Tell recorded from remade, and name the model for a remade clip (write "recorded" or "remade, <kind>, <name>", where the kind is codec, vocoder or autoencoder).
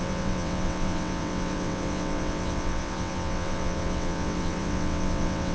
remade, vocoder, WaveNeXt